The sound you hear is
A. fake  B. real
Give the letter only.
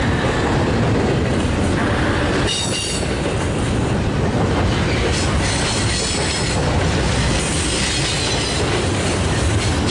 B